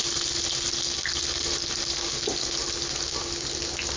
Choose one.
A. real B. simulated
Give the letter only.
A